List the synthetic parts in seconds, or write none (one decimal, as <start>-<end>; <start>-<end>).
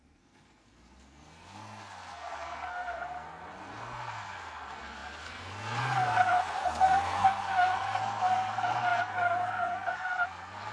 0.0-10.7